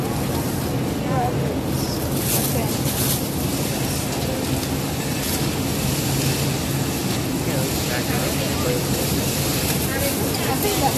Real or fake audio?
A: real